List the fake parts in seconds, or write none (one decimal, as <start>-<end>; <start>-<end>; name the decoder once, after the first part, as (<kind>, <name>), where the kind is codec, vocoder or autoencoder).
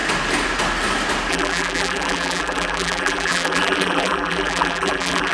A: 1.3-5.3 (vocoder, BigVGAN v2)